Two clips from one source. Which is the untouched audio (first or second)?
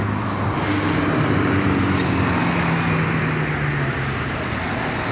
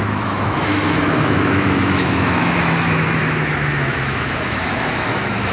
first